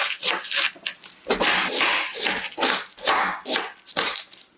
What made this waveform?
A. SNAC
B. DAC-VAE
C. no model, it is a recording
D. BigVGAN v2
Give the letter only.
C